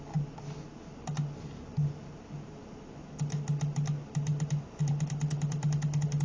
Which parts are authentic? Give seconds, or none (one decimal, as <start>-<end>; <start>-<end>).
0.0-6.2